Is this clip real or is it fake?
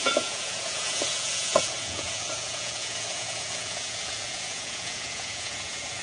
fake